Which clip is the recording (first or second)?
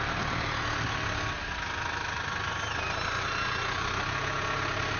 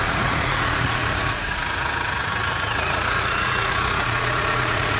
first